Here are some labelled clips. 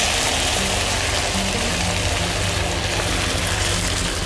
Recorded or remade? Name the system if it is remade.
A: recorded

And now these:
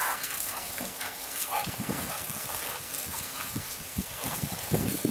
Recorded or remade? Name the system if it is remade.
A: remade, codec, SNAC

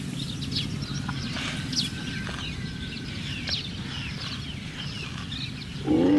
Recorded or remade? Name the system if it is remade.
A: recorded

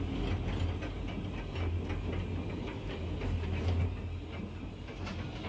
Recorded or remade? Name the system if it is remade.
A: recorded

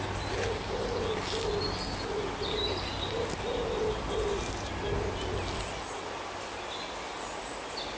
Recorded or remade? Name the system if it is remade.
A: recorded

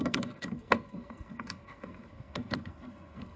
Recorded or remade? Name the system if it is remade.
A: remade, codec, SNAC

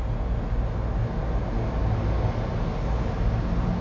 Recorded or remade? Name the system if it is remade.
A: recorded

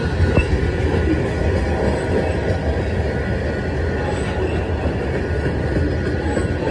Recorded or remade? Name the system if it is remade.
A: recorded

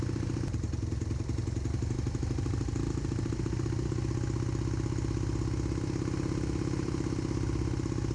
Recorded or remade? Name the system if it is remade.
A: recorded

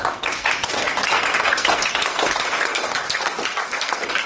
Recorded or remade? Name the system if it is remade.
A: remade, codec, SNAC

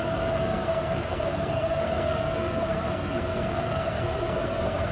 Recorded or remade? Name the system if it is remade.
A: remade, codec, SNAC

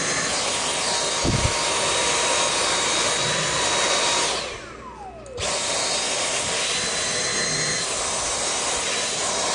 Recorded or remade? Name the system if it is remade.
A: recorded